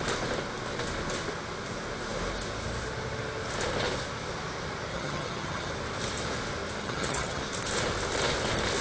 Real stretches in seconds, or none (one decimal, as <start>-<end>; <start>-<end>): 0.0-4.9; 5.7-6.8; 7.4-8.8